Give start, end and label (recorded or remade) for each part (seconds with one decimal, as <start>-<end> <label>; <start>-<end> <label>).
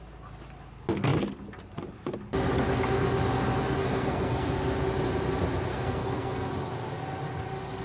0.0-3.8 recorded; 3.8-4.6 remade; 4.6-5.7 recorded; 5.7-6.5 remade; 6.5-7.8 recorded